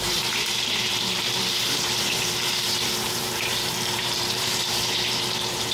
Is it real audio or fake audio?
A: fake